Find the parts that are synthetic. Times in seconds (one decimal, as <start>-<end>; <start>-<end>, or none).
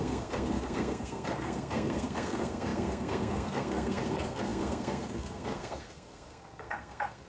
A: 0.0-7.3